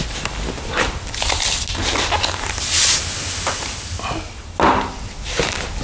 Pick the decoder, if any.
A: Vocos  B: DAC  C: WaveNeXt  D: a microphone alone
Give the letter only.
D